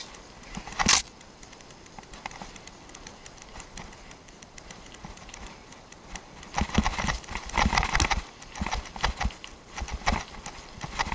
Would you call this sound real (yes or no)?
yes